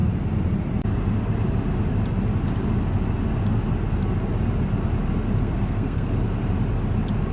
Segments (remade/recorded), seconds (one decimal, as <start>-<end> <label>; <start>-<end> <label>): 0.0-5.4 recorded; 5.4-6.1 remade; 6.1-7.3 recorded